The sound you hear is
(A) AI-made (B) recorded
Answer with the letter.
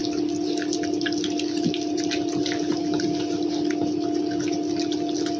B